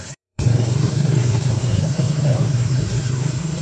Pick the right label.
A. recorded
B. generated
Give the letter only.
B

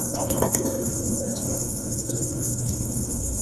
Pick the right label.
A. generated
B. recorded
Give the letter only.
A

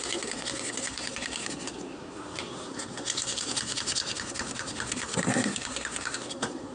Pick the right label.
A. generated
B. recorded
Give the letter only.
A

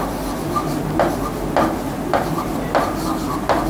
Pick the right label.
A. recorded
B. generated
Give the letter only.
A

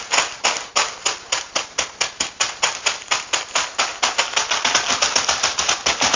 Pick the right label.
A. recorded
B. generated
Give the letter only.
A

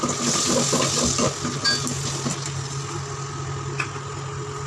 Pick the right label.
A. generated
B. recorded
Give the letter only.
B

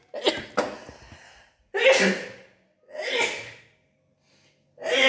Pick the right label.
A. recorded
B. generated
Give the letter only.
A